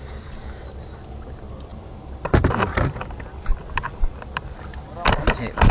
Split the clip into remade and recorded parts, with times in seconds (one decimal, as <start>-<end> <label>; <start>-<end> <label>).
0.0-5.7 recorded